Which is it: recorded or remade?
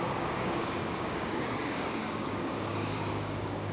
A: remade